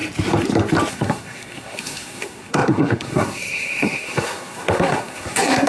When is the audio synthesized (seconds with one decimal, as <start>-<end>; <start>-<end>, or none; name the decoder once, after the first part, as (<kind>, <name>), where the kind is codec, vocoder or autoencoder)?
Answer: 0.9-5.7 (codec, SNAC)